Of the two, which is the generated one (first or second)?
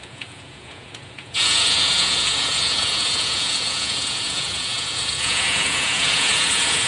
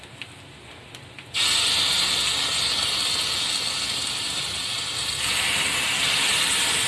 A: first